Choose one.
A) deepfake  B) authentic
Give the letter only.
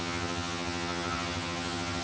A